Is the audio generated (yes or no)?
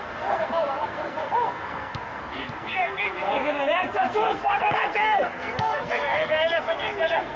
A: yes